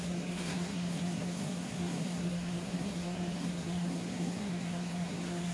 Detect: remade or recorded remade